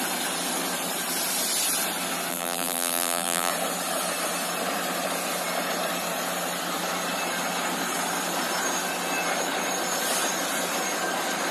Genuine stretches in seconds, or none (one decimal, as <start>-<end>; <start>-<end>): 0.0-2.3; 3.5-11.5